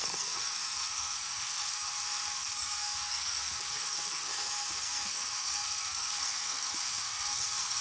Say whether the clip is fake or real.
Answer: fake